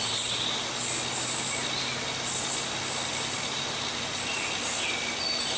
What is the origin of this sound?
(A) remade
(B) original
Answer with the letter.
B